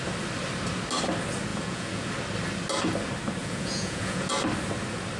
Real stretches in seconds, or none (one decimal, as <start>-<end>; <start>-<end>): 0.0-1.5; 2.1-3.4; 4.3-5.2